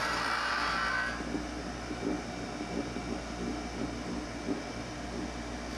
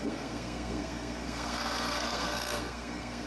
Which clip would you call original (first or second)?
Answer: first